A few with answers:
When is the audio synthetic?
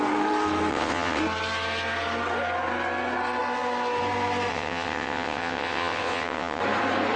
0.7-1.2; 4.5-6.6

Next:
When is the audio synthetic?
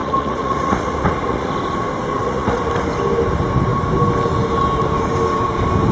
0.0-1.5; 2.2-2.7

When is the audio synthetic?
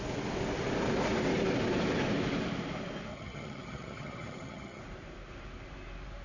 3.1-4.8